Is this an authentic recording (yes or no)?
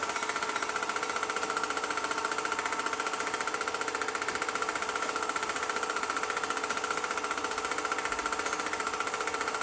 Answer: yes